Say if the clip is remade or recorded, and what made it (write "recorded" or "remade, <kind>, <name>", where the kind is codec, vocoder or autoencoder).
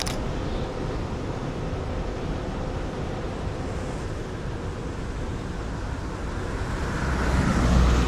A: recorded